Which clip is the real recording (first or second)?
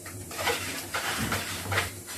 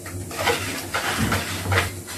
second